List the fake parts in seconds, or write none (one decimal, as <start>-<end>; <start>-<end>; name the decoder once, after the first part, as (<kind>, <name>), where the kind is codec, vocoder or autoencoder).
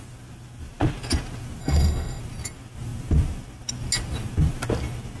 1.6-2.2 (codec, SNAC)